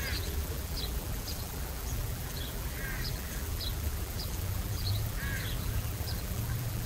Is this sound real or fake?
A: fake